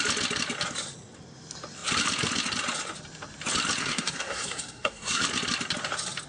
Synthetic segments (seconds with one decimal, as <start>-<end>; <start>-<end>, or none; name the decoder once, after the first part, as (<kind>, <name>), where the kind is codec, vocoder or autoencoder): 3.8-5.2 (codec, SNAC)